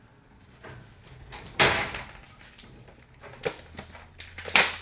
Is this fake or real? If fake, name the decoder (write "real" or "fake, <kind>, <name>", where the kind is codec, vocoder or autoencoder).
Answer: real